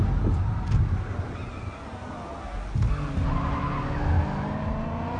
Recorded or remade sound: recorded